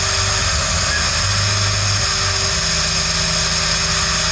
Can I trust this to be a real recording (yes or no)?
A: yes